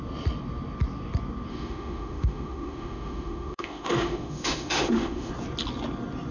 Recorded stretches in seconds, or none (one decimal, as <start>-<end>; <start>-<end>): 0.0-1.5; 5.3-6.3